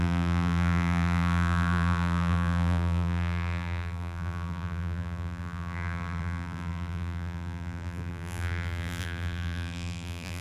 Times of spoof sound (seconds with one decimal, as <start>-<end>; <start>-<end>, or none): 0.0-10.4